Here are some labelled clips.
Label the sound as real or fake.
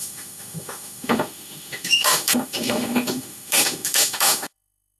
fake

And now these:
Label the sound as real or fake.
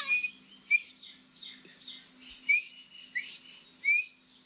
real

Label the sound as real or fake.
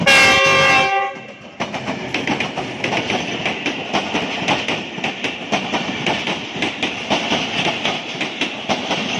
real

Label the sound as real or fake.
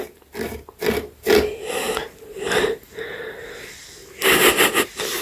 real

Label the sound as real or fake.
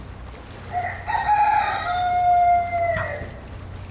real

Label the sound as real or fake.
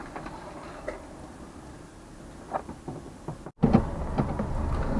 real